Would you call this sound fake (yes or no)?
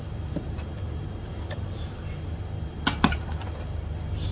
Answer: no